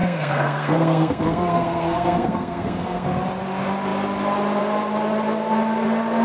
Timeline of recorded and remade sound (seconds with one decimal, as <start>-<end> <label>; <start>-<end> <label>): 0.0-3.2 remade; 3.2-6.2 recorded